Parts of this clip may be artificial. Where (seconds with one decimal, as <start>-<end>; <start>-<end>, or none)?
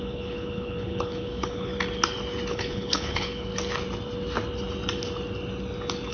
0.0-1.7; 2.5-3.5